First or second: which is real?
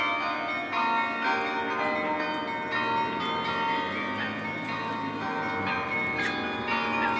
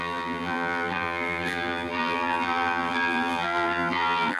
first